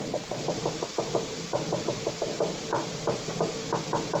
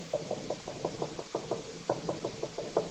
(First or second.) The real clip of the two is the first